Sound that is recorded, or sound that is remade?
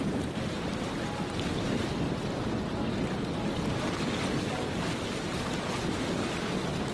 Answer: recorded